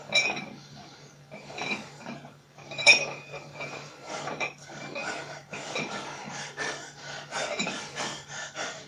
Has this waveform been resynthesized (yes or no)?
yes